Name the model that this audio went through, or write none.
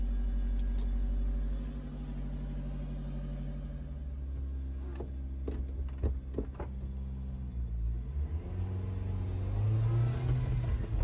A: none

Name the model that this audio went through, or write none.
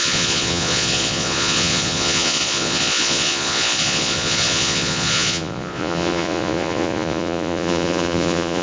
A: vocoder, Vocos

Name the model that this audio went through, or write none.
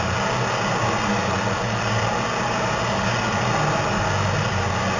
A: none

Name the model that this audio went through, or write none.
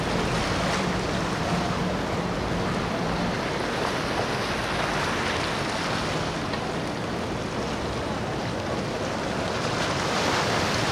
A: none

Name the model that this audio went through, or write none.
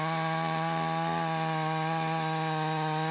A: none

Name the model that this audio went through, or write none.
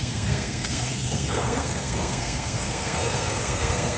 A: codec, SNAC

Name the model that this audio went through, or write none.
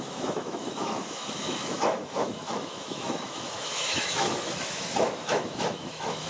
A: autoencoder, DAC-VAE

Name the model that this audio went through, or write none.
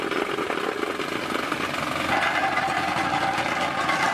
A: none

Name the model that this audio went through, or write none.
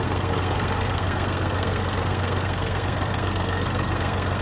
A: codec, SNAC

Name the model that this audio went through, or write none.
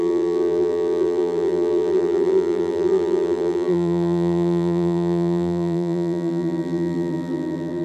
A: vocoder, BigVGAN v2